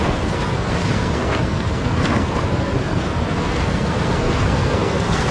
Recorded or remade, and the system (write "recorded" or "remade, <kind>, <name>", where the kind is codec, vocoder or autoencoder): remade, codec, SNAC